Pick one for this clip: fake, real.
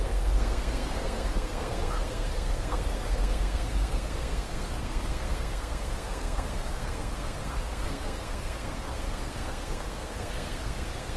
fake